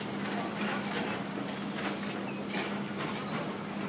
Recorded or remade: recorded